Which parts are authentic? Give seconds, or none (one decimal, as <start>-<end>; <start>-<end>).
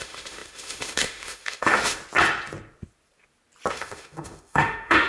2.0-3.7